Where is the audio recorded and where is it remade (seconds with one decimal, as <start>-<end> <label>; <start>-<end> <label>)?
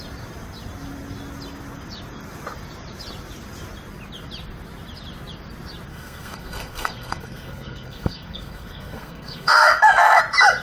0.0-5.9 recorded; 5.9-10.2 remade; 10.2-10.6 recorded